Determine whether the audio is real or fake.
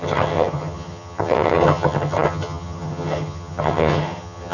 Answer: fake